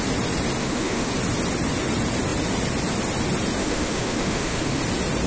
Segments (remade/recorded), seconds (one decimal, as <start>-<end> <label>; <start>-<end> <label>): 0.0-0.6 recorded; 0.6-1.1 remade; 1.1-3.6 recorded; 3.6-4.8 remade; 4.8-5.3 recorded